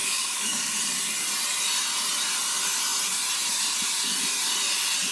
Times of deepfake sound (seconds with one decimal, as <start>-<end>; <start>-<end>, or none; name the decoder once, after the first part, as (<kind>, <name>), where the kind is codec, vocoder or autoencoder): 0.0-0.7 (codec, DAC)